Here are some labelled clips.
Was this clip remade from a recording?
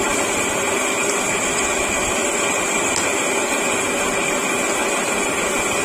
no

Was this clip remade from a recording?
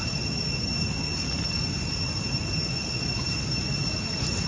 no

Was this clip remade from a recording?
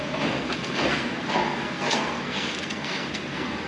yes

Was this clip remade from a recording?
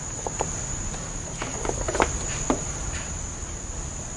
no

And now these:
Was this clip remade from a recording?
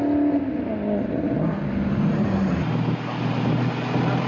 no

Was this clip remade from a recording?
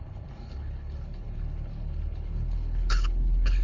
yes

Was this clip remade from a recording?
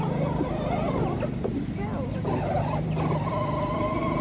yes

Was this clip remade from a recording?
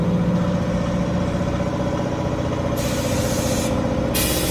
no